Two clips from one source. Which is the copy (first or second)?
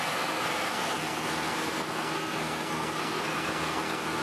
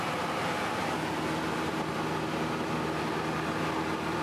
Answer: first